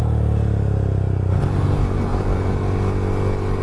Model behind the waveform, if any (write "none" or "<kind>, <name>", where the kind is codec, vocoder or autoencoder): none